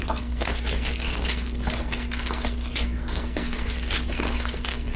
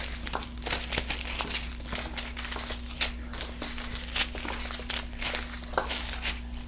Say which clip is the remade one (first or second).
first